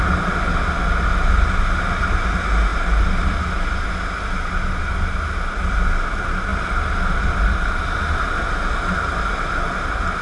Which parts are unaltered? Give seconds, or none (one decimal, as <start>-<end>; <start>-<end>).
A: 0.0-10.2